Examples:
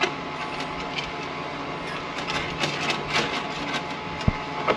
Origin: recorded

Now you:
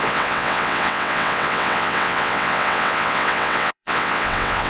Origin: remade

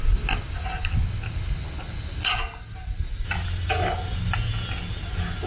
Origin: recorded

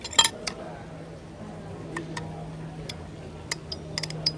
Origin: recorded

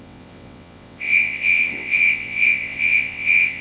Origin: remade